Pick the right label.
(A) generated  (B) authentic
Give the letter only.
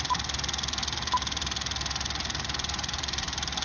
B